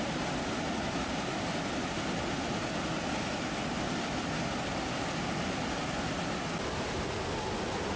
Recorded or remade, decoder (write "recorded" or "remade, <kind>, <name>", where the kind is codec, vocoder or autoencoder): recorded